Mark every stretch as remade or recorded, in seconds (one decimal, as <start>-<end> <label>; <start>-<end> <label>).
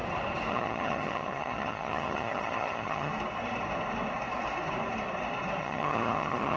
0.0-0.5 recorded; 0.5-3.1 remade; 3.1-5.6 recorded; 5.6-6.6 remade